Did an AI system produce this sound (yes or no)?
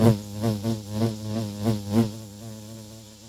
no